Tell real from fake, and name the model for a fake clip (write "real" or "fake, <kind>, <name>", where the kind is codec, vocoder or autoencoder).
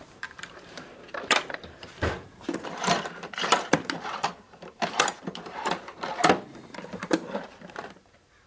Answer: fake, vocoder, BigVGAN v2